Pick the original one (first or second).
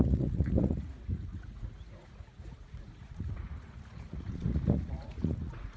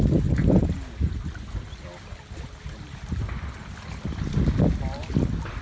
second